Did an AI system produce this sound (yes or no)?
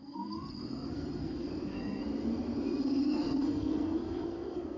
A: yes